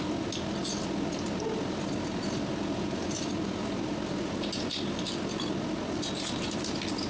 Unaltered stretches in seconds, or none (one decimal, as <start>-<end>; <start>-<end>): 0.0-7.1